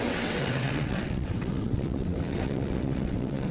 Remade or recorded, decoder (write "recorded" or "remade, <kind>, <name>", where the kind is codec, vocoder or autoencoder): remade, vocoder, WaveNeXt